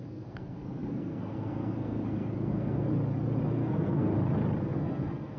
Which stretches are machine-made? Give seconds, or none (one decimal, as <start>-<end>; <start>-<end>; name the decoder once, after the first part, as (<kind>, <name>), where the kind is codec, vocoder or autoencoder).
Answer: 0.0-2.9 (codec, SNAC); 3.5-4.1; 4.6-5.4